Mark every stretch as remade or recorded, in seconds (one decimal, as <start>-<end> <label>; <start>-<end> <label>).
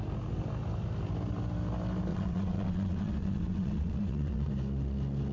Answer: 0.0-2.1 recorded; 2.1-4.5 remade; 4.5-5.3 recorded